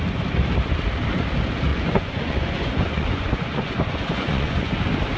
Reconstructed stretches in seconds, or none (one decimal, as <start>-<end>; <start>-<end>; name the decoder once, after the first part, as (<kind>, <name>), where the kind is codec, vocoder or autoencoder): 1.7-4.7 (vocoder, Vocos)